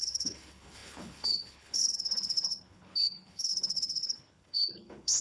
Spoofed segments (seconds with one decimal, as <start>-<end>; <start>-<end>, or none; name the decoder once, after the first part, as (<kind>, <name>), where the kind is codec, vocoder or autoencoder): 0.0-5.2 (codec, HILCodec)